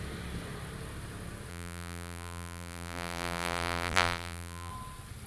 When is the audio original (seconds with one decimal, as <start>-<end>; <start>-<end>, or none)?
0.0-1.5; 4.7-5.3